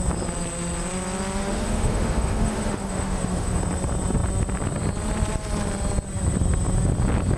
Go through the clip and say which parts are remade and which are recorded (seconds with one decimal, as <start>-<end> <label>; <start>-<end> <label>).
0.0-1.4 recorded; 1.4-3.6 remade; 3.6-7.4 recorded